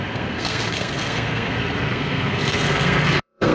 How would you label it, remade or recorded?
remade